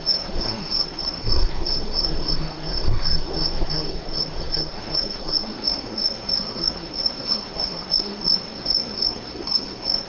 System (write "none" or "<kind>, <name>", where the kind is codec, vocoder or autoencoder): codec, SNAC